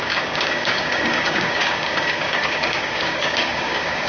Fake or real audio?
fake